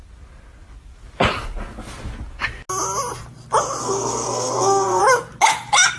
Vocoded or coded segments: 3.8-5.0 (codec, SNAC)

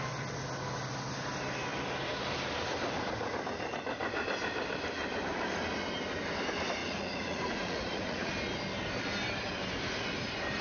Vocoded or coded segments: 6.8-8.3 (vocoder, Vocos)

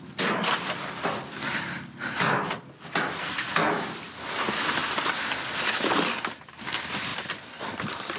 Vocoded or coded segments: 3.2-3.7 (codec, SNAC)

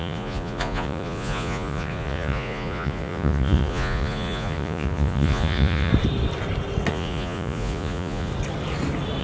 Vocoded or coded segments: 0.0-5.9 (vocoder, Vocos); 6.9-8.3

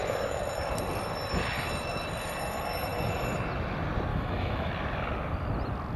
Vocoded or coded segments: 4.1-4.7 (autoencoder, DAC-VAE)

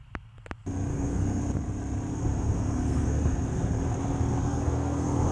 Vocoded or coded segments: 0.9-1.4 (codec, SNAC); 2.1-3.7; 4.4-5.3

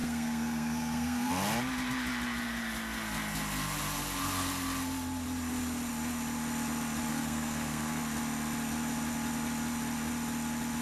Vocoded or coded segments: 0.0-1.3 (codec, SNAC); 7.1-8.0